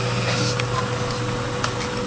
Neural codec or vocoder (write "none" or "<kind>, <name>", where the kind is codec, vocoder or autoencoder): none